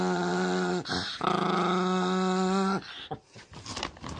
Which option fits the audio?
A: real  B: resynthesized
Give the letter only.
A